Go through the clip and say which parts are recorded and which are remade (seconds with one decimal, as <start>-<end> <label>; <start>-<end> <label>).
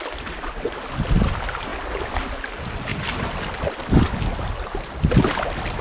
0.0-5.8 recorded